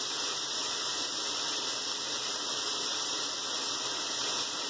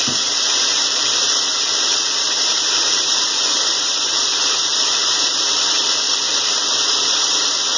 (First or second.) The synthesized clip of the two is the second